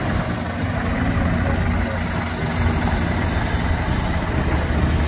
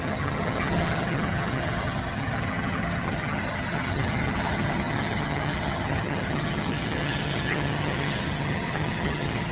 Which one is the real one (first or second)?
first